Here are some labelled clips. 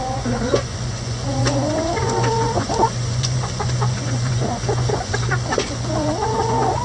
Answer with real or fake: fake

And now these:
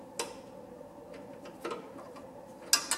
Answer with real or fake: real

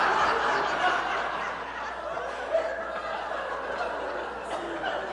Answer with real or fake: real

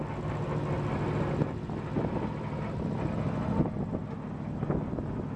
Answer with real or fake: real